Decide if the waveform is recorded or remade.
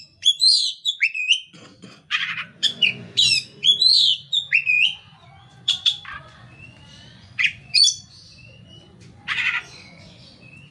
remade